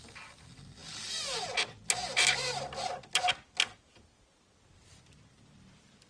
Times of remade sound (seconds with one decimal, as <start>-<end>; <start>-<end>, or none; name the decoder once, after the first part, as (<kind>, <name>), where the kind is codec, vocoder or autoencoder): none